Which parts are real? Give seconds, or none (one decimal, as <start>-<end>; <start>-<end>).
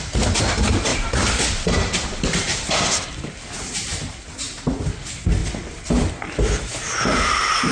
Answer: 0.0-0.9; 2.7-7.7